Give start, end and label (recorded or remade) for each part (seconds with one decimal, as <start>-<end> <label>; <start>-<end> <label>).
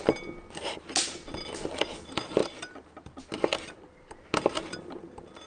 0.0-5.5 recorded